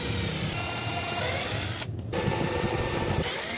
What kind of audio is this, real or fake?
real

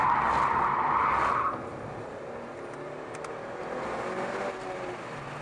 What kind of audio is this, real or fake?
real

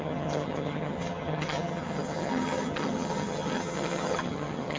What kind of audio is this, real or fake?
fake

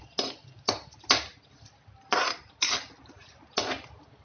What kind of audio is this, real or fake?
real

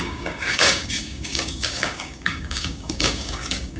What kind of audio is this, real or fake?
fake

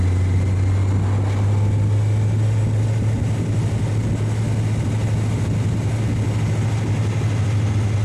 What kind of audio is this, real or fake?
real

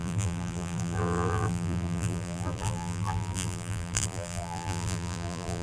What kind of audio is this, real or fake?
fake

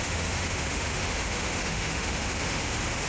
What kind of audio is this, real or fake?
fake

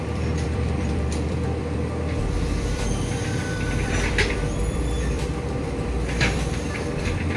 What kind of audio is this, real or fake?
fake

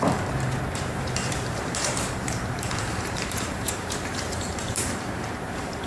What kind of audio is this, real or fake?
fake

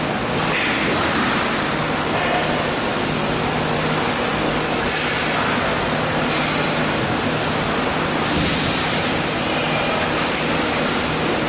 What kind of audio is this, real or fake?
real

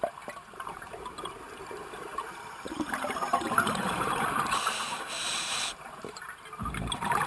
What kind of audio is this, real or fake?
fake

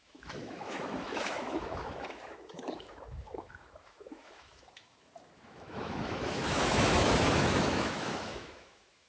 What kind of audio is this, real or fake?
fake